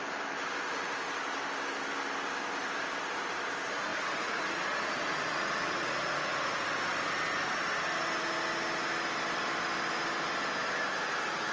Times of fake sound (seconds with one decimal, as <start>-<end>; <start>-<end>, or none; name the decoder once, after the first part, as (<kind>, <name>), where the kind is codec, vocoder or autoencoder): 3.9-6.7 (vocoder, Vocos)